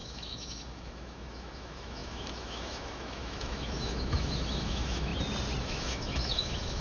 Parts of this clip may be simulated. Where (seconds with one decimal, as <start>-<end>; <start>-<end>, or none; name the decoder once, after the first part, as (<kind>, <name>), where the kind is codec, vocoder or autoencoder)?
0.0-5.1 (autoencoder, DAC-VAE); 5.6-6.8

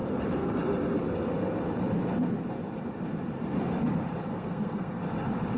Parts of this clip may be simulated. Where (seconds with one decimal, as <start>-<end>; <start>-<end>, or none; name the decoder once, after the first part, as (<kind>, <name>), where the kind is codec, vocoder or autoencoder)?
4.3-5.0 (codec, SNAC)

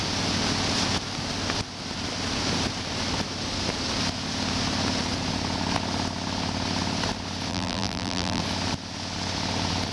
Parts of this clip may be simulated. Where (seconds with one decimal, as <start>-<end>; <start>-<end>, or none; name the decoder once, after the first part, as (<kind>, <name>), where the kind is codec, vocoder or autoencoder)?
7.5-8.4 (vocoder, BigVGAN v2)

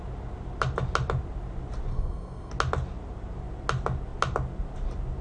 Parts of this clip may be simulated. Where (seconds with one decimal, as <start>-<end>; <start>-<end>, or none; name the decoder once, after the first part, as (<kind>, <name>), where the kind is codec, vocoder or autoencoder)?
1.9-2.5 (codec, SNAC)

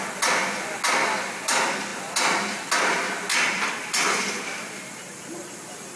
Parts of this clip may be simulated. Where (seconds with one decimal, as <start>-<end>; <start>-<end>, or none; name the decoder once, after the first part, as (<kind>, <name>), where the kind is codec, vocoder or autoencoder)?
none

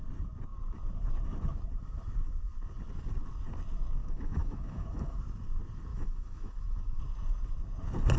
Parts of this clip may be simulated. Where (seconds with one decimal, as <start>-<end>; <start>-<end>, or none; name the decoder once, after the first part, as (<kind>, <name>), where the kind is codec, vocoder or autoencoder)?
4.0-5.2 (autoencoder, DAC-VAE); 5.9-7.0

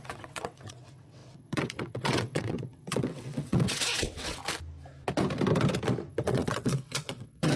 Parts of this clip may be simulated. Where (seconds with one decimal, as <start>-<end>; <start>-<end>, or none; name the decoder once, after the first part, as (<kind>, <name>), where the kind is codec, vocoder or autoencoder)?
0.0-4.4 (vocoder, WaveNeXt); 6.1-7.6